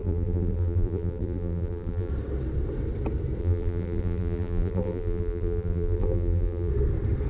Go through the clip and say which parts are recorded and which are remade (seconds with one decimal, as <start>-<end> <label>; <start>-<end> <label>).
0.0-2.1 remade; 2.1-3.4 recorded; 3.4-6.7 remade; 6.7-7.3 recorded